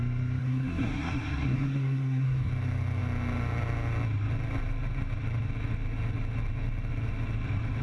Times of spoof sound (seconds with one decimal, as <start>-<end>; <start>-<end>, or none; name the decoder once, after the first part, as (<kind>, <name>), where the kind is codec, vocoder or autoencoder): 0.4-2.5 (codec, SNAC)